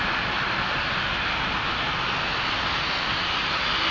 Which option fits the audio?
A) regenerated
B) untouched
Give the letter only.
B